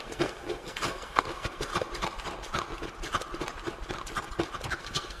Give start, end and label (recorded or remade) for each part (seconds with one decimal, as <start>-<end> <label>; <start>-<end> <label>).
0.0-1.7 remade; 1.7-4.8 recorded; 4.8-5.2 remade